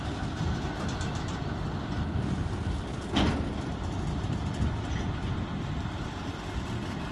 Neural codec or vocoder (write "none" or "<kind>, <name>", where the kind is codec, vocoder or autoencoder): none